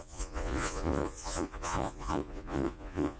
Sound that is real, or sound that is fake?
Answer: fake